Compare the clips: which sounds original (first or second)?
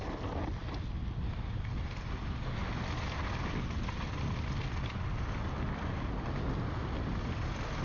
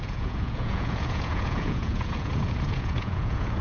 first